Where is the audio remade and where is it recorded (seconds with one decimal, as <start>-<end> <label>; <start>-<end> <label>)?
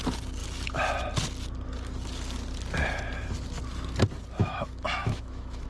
0.0-4.4 recorded; 4.4-5.7 remade